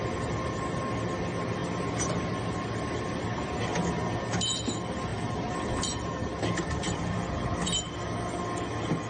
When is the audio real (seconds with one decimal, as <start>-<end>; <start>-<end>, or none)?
0.0-5.1; 7.3-9.1

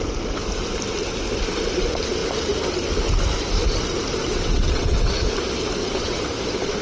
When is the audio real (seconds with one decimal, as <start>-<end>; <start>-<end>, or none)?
0.0-4.2; 5.1-5.8; 6.3-6.8

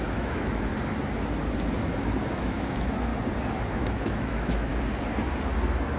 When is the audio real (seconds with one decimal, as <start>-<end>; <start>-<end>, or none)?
0.7-2.4; 3.1-3.7; 4.7-6.0

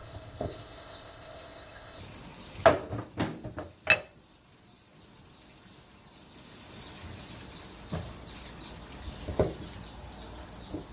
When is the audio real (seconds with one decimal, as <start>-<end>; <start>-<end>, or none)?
2.0-10.9

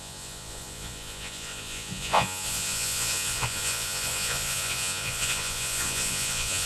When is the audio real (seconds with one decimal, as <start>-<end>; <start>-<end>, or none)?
none